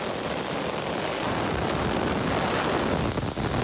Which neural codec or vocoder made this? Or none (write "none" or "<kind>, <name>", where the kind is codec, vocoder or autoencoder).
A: none